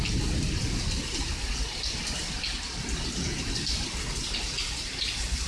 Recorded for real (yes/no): yes